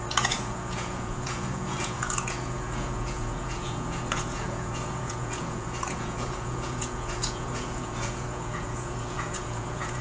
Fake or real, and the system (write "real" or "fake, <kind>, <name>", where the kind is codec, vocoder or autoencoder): fake, vocoder, Vocos